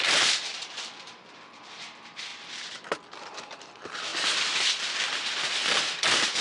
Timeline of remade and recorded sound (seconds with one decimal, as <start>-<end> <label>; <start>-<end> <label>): 0.0-2.3 remade; 2.3-3.1 recorded; 3.1-4.1 remade; 4.1-5.7 recorded; 5.7-6.4 remade